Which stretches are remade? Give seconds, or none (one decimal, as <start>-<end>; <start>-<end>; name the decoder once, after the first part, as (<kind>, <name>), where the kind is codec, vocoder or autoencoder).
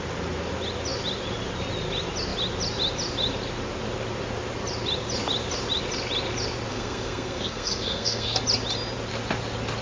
6.7-8.4 (codec, SNAC)